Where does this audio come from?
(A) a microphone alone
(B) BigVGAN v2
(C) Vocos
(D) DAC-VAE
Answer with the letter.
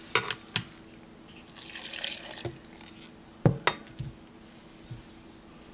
A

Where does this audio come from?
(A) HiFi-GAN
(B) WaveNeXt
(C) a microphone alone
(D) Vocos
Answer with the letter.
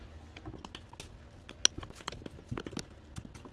C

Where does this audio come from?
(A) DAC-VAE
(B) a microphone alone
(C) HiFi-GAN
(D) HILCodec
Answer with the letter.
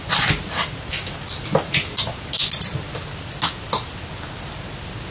B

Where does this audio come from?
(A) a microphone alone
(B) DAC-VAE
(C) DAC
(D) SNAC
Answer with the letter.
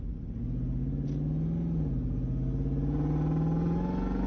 A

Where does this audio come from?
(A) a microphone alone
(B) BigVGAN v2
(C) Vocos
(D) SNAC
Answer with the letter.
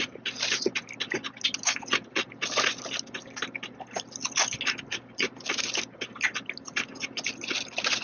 A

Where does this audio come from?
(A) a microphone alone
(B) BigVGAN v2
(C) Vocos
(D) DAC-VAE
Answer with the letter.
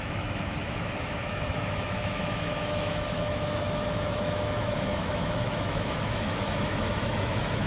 D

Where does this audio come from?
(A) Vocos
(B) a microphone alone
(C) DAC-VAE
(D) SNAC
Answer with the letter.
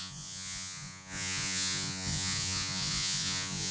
A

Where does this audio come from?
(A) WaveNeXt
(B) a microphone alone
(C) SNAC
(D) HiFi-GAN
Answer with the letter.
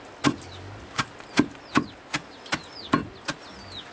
B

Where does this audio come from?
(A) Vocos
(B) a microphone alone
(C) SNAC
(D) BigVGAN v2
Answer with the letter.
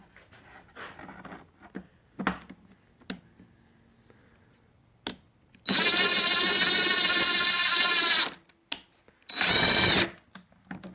B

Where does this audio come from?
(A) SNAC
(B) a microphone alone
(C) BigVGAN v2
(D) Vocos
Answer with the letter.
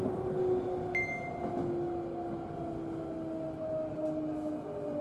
B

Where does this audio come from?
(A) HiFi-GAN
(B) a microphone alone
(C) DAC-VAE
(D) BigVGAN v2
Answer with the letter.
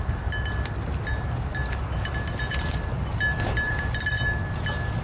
B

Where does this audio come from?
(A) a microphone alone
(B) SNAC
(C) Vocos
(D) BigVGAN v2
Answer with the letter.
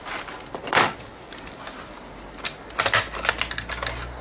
A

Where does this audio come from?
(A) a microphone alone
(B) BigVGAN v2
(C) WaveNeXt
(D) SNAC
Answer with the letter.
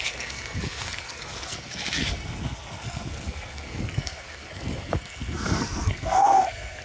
D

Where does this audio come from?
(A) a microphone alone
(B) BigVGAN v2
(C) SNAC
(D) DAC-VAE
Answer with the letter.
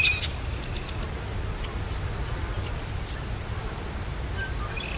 A